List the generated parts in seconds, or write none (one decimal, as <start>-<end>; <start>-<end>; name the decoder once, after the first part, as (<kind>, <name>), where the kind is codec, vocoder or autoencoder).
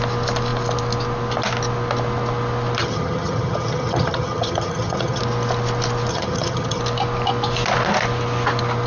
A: 2.8-5.2 (vocoder, HiFi-GAN); 6.1-6.8